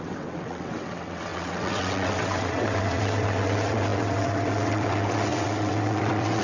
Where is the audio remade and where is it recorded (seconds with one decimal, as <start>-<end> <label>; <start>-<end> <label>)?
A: 0.0-6.4 remade